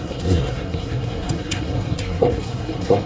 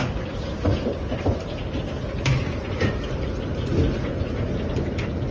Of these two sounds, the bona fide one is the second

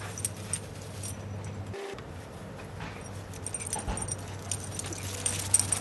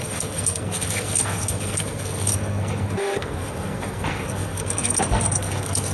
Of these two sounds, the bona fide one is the first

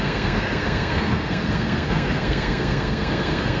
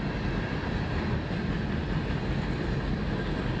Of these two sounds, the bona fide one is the second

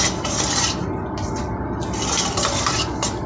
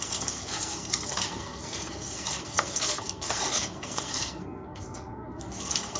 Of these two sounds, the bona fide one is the first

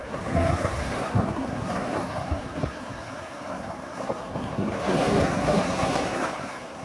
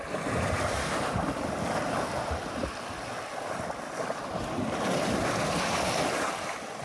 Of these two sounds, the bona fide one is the second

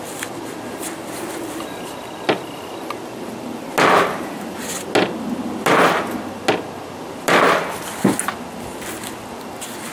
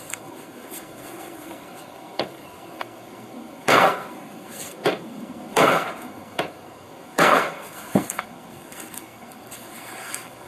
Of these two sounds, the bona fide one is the first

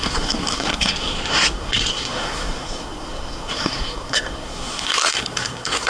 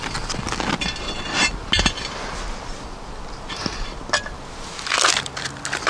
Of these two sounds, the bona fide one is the second